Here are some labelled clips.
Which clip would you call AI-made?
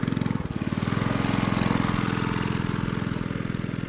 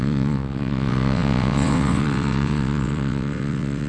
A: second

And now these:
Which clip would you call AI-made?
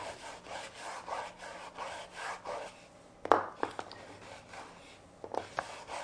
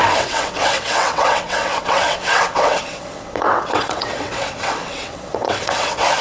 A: second